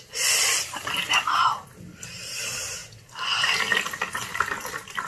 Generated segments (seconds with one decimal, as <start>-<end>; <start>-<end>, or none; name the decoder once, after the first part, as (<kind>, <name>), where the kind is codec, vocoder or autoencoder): none